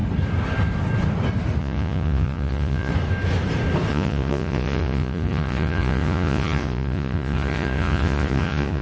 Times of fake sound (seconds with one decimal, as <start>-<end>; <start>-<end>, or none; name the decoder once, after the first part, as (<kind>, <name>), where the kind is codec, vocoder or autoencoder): 1.6-2.9 (vocoder, Vocos); 3.9-8.8